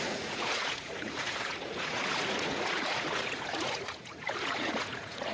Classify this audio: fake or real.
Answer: fake